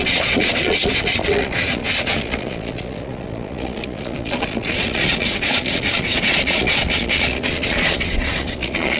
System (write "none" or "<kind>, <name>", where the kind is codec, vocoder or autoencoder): vocoder, Vocos